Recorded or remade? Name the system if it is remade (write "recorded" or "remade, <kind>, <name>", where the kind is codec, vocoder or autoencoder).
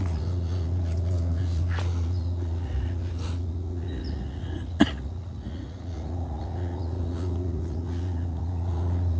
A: remade, vocoder, Vocos